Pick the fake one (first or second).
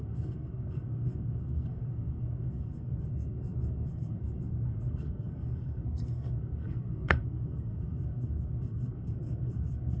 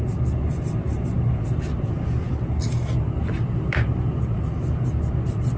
first